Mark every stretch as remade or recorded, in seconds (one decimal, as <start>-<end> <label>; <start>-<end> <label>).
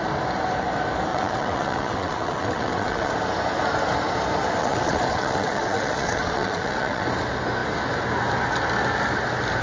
0.0-1.1 recorded; 1.1-3.1 remade; 3.1-4.6 recorded; 4.6-7.1 remade; 7.1-9.6 recorded